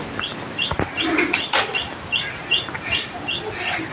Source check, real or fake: real